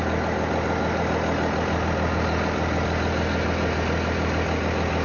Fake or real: real